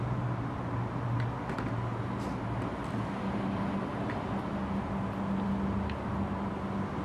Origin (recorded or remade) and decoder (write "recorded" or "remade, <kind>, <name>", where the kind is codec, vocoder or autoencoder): recorded